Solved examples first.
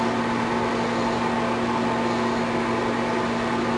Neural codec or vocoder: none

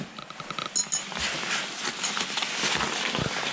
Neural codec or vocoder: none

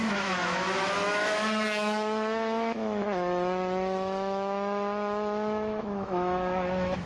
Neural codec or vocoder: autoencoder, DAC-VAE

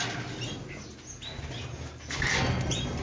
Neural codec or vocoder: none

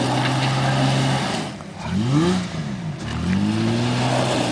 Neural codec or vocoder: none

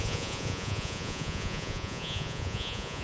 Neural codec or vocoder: vocoder, Vocos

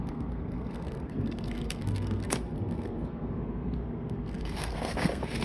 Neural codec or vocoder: codec, SNAC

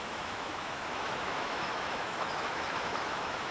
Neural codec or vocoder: autoencoder, DAC-VAE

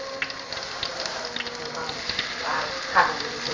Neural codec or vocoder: none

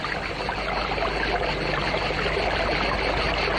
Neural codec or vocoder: none